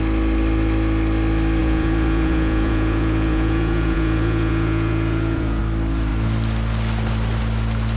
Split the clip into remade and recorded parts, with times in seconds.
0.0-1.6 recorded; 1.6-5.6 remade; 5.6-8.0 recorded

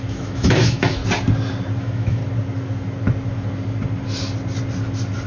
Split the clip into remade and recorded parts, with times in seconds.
0.0-1.0 remade; 1.0-1.8 recorded; 1.8-2.2 remade; 2.2-5.3 recorded

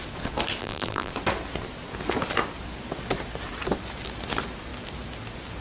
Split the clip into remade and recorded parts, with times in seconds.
0.0-0.6 recorded; 0.6-1.1 remade; 1.1-5.6 recorded

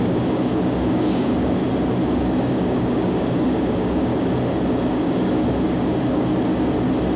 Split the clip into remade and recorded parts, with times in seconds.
0.0-1.6 remade; 1.6-2.4 recorded; 2.4-4.1 remade; 4.1-4.9 recorded; 4.9-6.3 remade; 6.3-7.2 recorded